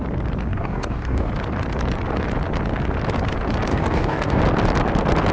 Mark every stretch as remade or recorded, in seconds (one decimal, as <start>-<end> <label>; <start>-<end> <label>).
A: 0.0-0.5 recorded; 0.5-1.3 remade; 1.3-3.7 recorded; 3.7-4.4 remade; 4.4-5.3 recorded

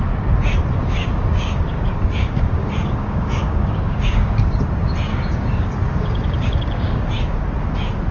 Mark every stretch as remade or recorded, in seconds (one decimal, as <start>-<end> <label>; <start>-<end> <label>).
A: 0.0-0.8 recorded; 0.8-4.6 remade; 4.6-5.1 recorded; 5.1-7.4 remade; 7.4-8.1 recorded